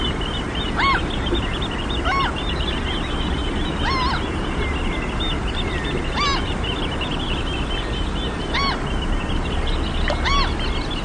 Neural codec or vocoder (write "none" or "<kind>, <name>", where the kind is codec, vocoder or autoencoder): none